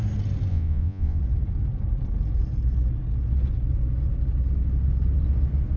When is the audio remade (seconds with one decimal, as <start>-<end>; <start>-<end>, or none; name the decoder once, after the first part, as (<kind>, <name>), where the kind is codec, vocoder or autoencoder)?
0.5-1.2 (vocoder, Vocos)